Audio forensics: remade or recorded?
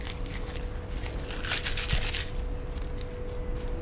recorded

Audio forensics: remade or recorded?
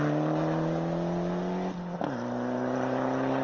recorded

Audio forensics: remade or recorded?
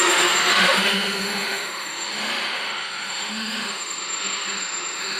remade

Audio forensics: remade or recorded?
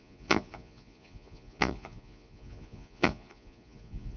remade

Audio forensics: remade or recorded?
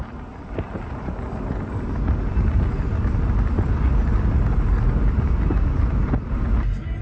recorded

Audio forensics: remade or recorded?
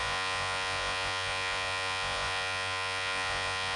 remade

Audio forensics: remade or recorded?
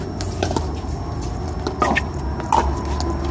recorded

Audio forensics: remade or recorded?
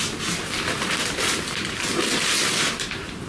remade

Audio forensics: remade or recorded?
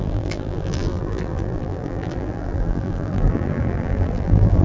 remade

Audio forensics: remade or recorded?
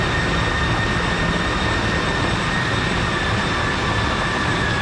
recorded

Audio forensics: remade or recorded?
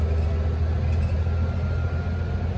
recorded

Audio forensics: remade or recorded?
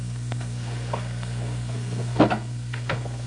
remade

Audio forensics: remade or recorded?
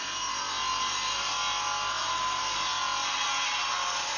recorded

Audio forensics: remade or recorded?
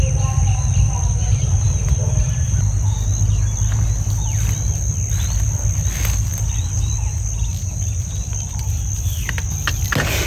recorded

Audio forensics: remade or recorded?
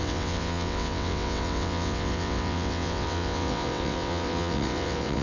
remade